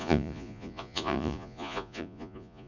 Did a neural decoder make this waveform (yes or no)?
yes